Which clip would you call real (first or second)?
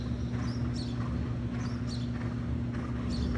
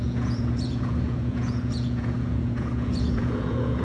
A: first